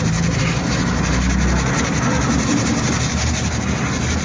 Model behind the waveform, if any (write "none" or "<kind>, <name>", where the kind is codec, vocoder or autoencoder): none